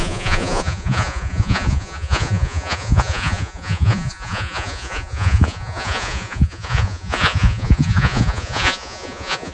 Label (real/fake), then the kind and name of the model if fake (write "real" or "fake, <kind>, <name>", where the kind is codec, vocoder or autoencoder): fake, vocoder, Vocos